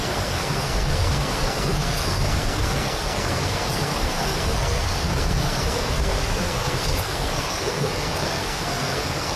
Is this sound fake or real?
fake